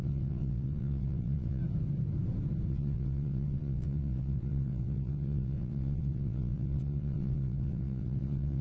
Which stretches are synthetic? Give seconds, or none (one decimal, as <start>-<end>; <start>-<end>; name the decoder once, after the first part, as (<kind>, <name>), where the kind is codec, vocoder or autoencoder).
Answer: 0.0-1.6 (vocoder, WaveNeXt); 2.7-8.6